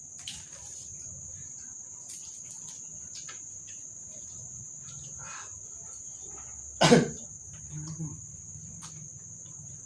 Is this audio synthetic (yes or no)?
no